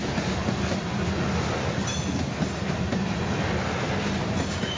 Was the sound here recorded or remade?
recorded